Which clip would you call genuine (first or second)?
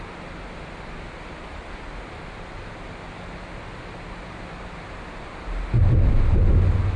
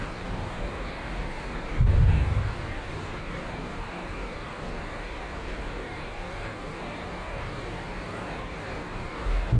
first